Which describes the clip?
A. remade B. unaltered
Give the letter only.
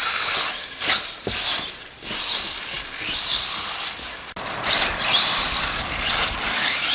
B